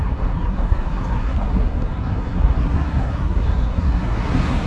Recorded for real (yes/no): no